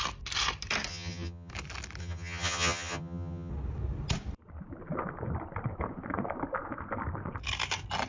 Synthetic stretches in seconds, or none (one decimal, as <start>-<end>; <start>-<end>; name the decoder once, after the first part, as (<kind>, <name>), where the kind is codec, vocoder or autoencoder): 0.9-1.5 (vocoder, HiFi-GAN); 2.0-3.5